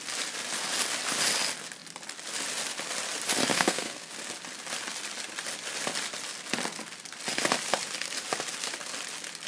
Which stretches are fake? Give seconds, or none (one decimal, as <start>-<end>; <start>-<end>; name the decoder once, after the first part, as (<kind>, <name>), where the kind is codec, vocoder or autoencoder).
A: 3.5-4.1 (codec, SNAC)